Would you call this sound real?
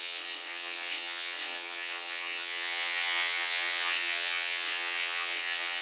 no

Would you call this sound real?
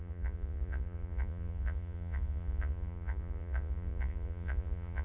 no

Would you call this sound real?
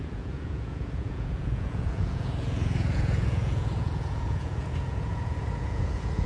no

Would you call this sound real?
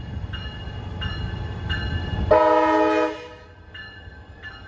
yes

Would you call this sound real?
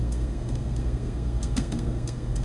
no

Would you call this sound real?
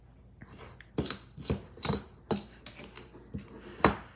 yes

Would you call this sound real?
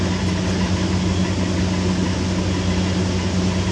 yes